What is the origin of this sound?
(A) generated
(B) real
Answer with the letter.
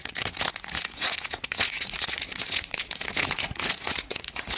A